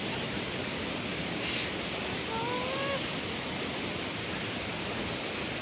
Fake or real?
real